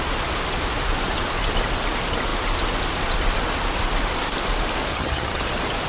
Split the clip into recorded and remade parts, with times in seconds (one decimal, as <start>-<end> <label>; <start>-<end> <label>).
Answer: 0.0-4.9 recorded; 4.9-5.4 remade; 5.4-5.9 recorded